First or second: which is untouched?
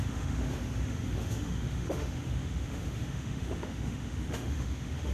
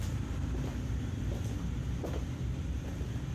second